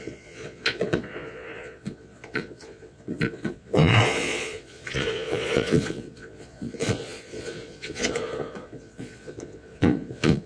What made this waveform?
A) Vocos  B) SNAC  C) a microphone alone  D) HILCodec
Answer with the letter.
A